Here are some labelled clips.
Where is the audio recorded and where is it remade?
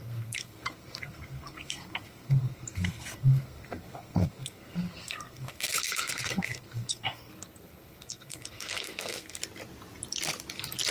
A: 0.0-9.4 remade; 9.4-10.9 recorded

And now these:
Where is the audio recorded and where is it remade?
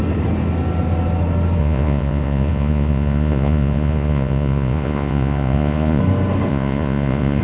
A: 0.0-1.6 recorded; 1.6-6.0 remade; 6.0-6.5 recorded; 6.5-7.4 remade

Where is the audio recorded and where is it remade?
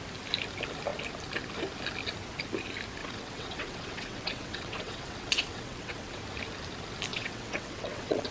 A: 0.0-3.0 recorded; 3.0-6.2 remade; 6.2-7.1 recorded; 7.1-8.3 remade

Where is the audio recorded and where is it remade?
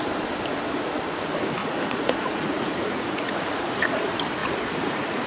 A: 0.0-1.6 recorded; 1.6-4.0 remade; 4.0-4.4 recorded; 4.4-5.3 remade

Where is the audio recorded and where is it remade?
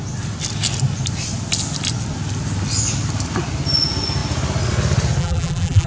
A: 0.0-5.2 recorded; 5.2-5.9 remade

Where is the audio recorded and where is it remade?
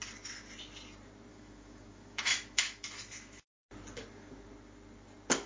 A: 0.0-1.3 recorded; 1.3-3.7 remade; 3.7-5.5 recorded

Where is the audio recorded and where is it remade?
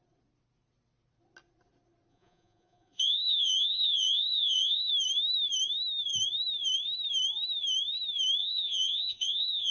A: 0.0-2.1 recorded; 2.1-4.9 remade; 4.9-8.4 recorded; 8.4-9.7 remade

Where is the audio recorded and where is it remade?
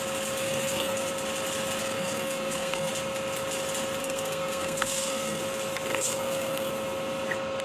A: 0.0-0.4 recorded; 0.4-1.1 remade; 1.1-1.8 recorded; 1.8-2.9 remade; 2.9-4.0 recorded; 4.0-5.4 remade; 5.4-5.9 recorded; 5.9-6.7 remade; 6.7-7.6 recorded